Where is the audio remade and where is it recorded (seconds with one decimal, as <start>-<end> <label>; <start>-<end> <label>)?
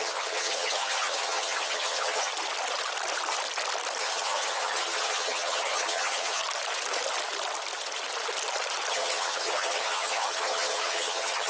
0.0-2.3 remade; 2.3-4.0 recorded; 4.0-6.4 remade; 6.4-8.9 recorded; 8.9-11.5 remade